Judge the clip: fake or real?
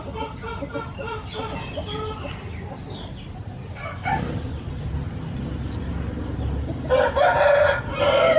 real